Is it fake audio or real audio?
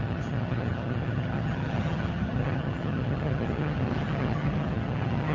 fake